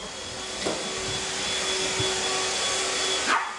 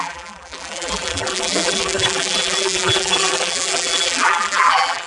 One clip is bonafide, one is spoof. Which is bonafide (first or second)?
first